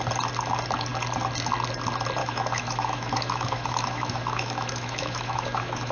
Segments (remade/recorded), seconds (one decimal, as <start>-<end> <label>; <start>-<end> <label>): 0.0-2.2 recorded; 2.2-5.9 remade